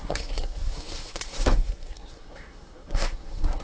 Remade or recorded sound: remade